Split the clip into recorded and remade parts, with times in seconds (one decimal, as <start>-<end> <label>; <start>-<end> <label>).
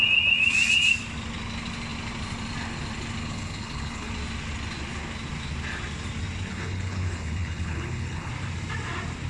0.0-3.2 recorded; 3.2-4.1 remade; 4.1-6.5 recorded; 6.5-8.3 remade; 8.3-9.3 recorded